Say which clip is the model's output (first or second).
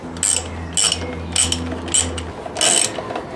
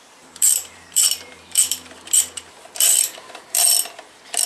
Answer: second